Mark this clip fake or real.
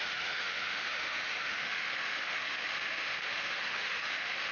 fake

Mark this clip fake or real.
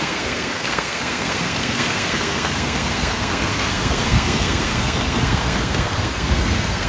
fake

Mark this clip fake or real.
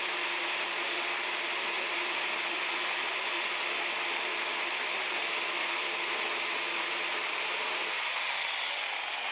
real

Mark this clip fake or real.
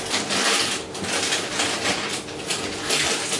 real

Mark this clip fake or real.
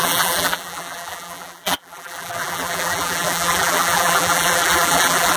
fake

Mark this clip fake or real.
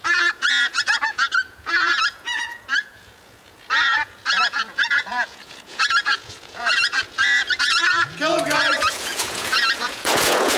fake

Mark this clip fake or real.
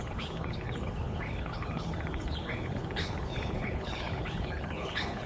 fake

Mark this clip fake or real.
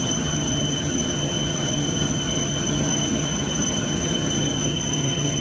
fake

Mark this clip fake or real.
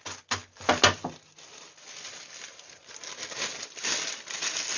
real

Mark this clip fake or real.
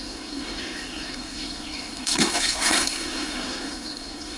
fake